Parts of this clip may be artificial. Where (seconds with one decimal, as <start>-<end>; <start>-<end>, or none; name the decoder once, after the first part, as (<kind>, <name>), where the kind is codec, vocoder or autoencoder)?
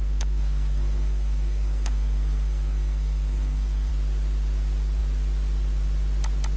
0.0-3.9 (codec, SNAC)